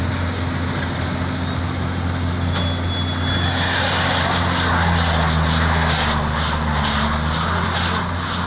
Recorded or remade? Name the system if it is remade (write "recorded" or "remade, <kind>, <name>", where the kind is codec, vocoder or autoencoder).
recorded